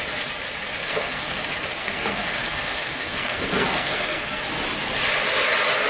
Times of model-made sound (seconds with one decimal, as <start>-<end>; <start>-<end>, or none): 0.8-1.4; 1.8-4.4